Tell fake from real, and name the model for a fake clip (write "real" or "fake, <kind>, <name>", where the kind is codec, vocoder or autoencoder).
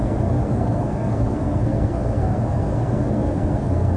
fake, codec, SNAC